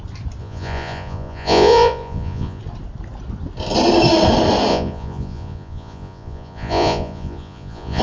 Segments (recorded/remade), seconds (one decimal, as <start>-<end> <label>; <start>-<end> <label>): 0.0-0.4 recorded; 0.4-2.6 remade; 2.6-4.7 recorded; 4.7-8.0 remade